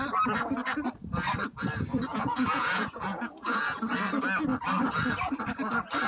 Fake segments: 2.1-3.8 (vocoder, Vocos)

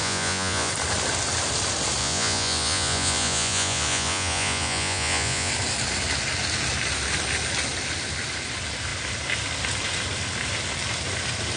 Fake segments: 0.0-0.7 (vocoder, Vocos); 2.0-5.5